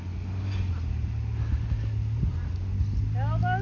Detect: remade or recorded recorded